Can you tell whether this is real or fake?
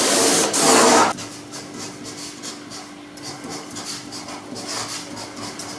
real